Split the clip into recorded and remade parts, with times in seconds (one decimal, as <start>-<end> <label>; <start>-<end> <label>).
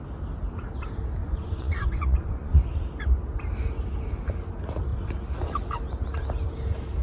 0.0-1.2 recorded; 1.2-2.6 remade; 2.6-7.0 recorded